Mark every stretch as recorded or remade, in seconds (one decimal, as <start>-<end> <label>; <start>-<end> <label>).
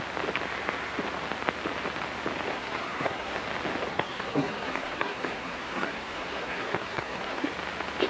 0.0-2.5 recorded; 2.5-3.4 remade; 3.4-3.9 recorded; 3.9-7.5 remade; 7.5-8.1 recorded